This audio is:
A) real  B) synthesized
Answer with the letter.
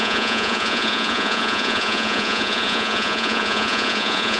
B